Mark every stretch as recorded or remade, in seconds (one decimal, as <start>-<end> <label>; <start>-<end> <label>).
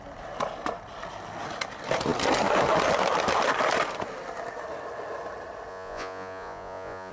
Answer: 0.0-5.7 recorded; 5.7-7.1 remade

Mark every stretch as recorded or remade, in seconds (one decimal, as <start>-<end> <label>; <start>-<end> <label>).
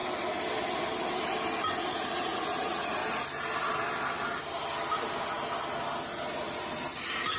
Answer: 0.0-2.1 recorded; 2.1-3.0 remade; 3.0-7.4 recorded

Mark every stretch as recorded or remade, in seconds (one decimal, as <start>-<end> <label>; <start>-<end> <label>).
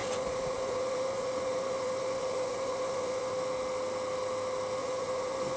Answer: 0.0-3.3 remade; 3.3-4.8 recorded; 4.8-5.6 remade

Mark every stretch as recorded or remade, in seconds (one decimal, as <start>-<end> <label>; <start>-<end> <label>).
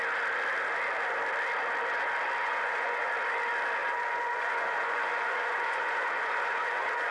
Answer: 0.0-2.4 recorded; 2.4-3.1 remade; 3.1-3.8 recorded; 3.8-7.1 remade